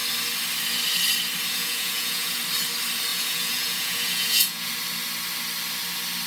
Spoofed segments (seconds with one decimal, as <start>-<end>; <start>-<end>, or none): 1.5-2.4; 3.1-4.7